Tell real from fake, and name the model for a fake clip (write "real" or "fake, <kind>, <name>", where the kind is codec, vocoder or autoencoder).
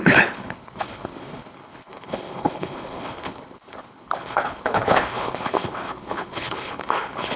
fake, codec, HILCodec